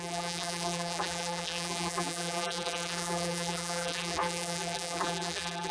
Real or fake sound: fake